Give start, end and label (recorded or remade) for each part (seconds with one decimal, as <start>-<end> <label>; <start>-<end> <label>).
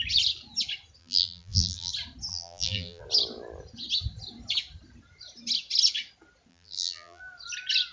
0.0-1.0 recorded; 1.0-1.9 remade; 1.9-2.3 recorded; 2.3-3.0 remade; 3.0-6.5 recorded; 6.5-7.2 remade; 7.2-7.9 recorded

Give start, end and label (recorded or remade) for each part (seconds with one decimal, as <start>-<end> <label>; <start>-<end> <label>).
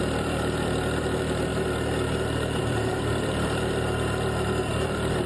0.0-1.5 remade; 1.5-2.6 recorded; 2.6-5.3 remade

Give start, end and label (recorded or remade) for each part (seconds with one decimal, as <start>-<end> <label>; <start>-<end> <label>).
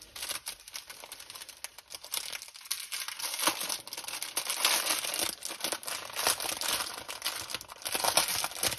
0.0-8.8 recorded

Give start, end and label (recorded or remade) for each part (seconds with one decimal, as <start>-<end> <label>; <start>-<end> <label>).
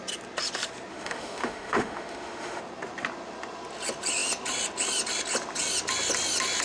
0.0-0.9 recorded; 0.9-2.6 remade; 2.6-6.6 recorded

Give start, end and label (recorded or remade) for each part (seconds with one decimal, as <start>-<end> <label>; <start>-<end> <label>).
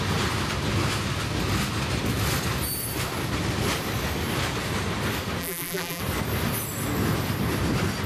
0.0-5.4 recorded; 5.4-6.0 remade; 6.0-8.1 recorded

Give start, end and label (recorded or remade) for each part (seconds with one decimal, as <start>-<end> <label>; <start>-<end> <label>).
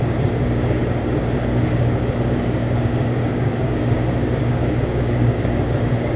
0.0-6.2 remade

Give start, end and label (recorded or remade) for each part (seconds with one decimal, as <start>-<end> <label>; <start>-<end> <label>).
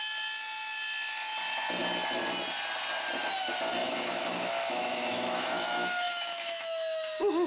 0.0-3.8 recorded; 3.8-7.5 remade